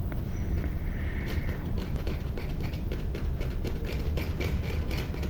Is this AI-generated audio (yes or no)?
yes